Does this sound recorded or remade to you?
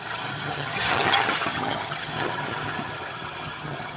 remade